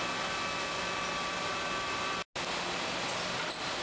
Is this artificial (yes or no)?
no